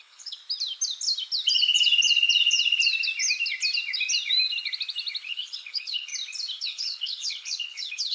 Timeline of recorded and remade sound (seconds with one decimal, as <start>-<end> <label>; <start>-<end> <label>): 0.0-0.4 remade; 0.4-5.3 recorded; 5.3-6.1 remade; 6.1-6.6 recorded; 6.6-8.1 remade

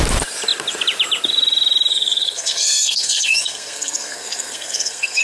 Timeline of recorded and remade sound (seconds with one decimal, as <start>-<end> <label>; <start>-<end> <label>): 0.0-1.9 recorded; 1.9-5.2 remade

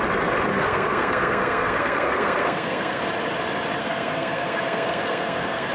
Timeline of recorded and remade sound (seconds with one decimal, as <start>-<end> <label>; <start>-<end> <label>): 0.0-0.5 recorded; 0.5-3.0 remade; 3.0-3.8 recorded; 3.8-5.7 remade

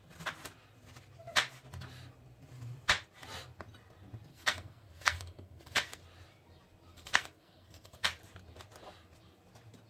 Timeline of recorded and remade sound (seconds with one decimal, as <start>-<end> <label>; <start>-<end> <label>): 0.0-4.3 recorded; 4.3-6.0 remade; 6.0-6.9 recorded; 6.9-8.1 remade; 8.1-9.9 recorded

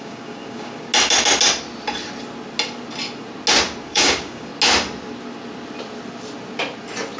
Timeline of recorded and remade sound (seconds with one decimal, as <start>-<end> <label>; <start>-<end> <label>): 0.0-0.9 remade; 0.9-3.8 recorded; 3.8-4.5 remade; 4.5-7.2 recorded

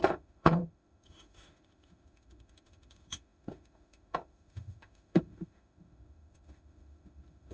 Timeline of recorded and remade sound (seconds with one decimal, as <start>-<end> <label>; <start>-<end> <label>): 0.0-7.5 remade